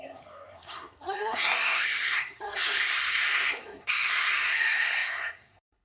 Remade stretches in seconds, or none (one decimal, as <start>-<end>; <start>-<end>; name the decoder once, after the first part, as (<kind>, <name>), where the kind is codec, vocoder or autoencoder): 0.0-5.8 (codec, SNAC)